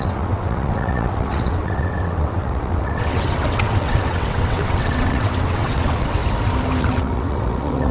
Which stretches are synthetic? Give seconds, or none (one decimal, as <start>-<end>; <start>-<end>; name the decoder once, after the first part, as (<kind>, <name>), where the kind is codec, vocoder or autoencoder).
0.0-6.2 (vocoder, WaveNeXt); 6.8-7.9